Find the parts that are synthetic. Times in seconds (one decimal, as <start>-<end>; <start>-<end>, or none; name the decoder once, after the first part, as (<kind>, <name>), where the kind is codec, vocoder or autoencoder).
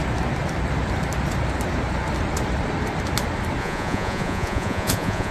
3.6-5.3 (vocoder, Vocos)